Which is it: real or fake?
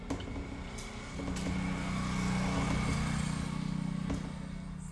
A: real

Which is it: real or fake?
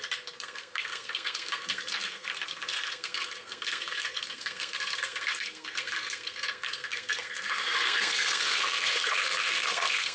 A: fake